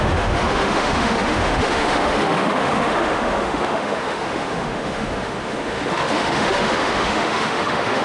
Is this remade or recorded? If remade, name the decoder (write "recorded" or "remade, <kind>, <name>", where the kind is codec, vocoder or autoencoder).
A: remade, autoencoder, DAC-VAE